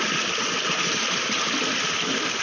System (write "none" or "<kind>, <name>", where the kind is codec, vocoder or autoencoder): none